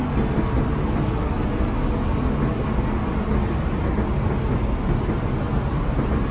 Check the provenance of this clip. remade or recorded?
recorded